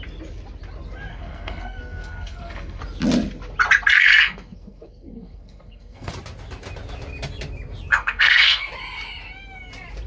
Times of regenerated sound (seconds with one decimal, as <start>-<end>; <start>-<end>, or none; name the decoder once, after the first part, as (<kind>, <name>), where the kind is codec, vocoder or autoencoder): 1.1-2.8 (codec, SNAC); 3.9-6.1; 7.9-8.7